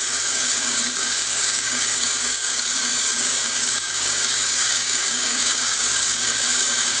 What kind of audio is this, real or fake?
fake